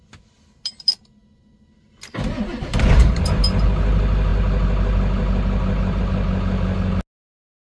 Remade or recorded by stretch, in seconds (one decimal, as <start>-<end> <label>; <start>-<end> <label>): 0.0-7.7 recorded